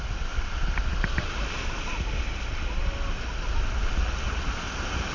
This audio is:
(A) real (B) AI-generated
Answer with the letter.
A